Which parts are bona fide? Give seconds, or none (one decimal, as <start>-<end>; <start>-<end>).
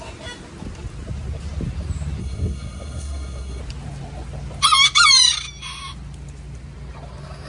0.0-2.2; 3.6-7.5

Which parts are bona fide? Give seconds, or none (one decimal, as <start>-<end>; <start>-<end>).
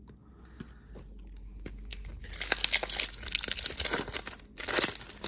0.0-5.3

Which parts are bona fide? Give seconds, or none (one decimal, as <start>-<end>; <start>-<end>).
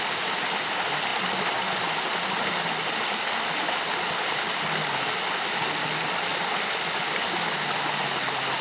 0.0-8.6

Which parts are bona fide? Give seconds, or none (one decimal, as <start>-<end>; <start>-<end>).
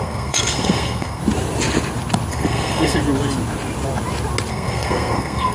1.2-2.3; 3.0-4.5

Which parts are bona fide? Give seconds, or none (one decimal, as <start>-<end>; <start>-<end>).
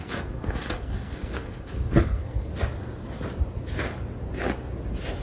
2.5-5.2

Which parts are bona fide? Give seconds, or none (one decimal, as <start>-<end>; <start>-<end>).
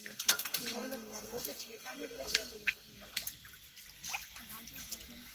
3.2-5.3